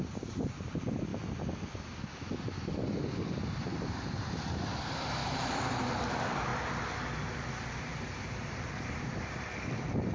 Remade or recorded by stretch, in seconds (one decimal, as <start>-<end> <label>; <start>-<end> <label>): 0.0-1.1 remade; 1.1-3.6 recorded; 3.6-6.5 remade; 6.5-7.6 recorded; 7.6-10.1 remade